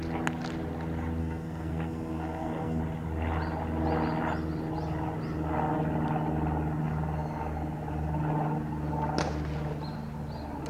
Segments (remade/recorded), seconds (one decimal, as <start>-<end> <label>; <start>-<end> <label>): 0.0-1.2 recorded; 1.2-2.8 remade; 2.8-10.7 recorded